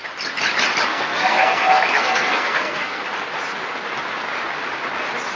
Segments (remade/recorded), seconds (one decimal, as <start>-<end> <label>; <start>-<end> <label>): 0.0-0.9 recorded; 0.9-3.0 remade; 3.0-5.4 recorded